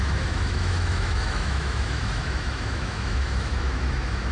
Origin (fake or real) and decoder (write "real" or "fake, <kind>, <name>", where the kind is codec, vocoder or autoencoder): fake, autoencoder, DAC-VAE